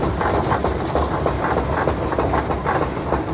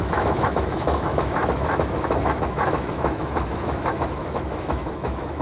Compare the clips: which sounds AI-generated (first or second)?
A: second